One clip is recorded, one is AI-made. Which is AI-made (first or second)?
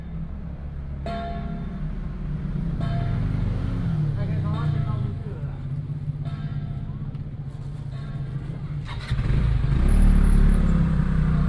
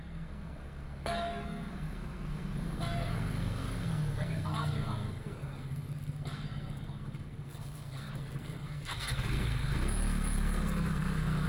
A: second